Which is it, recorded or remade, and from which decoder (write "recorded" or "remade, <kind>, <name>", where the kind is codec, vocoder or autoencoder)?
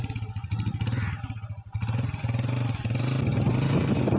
recorded